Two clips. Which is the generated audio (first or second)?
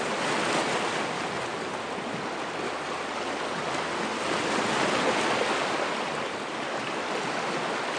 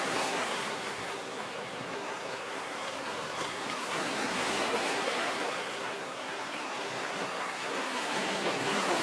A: second